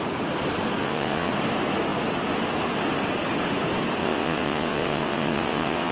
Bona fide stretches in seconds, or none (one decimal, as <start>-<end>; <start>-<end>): 0.0-0.8; 1.3-4.0